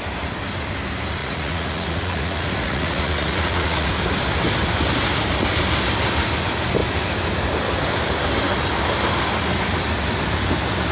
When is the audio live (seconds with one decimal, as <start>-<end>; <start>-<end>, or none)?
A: 0.0-1.2; 3.9-10.9